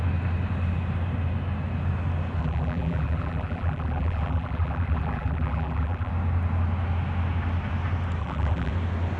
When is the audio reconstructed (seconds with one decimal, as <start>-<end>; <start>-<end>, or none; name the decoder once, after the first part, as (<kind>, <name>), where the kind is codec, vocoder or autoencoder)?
2.4-6.1 (vocoder, BigVGAN v2); 8.2-8.7